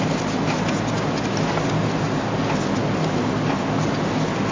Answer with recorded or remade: recorded